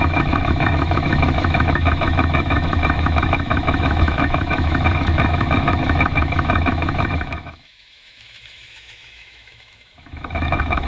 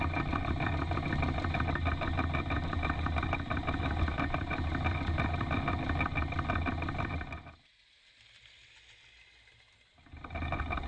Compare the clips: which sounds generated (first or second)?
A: first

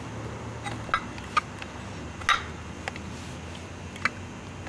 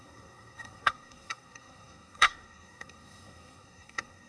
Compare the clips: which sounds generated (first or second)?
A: second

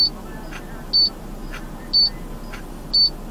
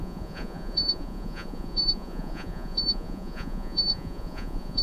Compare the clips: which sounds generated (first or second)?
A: second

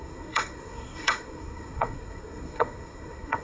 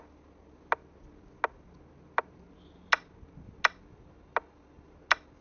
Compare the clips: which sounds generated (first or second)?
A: first